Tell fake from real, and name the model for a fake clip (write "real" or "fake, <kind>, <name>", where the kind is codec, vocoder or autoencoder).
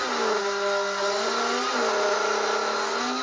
real